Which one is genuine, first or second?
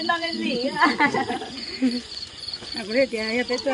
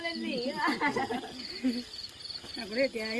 second